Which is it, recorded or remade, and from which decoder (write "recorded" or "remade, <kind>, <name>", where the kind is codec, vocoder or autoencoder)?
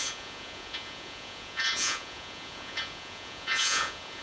remade, vocoder, Vocos